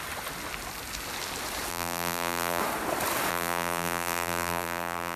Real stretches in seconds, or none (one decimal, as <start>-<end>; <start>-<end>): 0.0-1.7; 2.6-3.3